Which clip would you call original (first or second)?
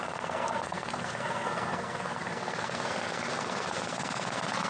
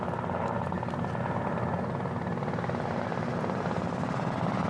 second